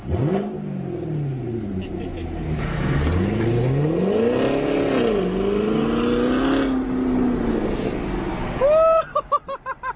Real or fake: real